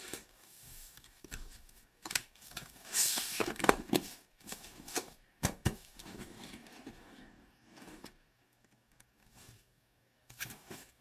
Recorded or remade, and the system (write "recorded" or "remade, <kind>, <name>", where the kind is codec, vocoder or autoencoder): remade, codec, DAC